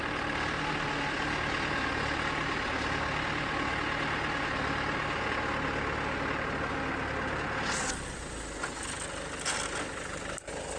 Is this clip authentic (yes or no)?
yes